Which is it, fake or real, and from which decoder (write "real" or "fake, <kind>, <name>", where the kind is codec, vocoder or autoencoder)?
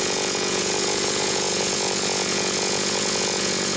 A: fake, vocoder, Vocos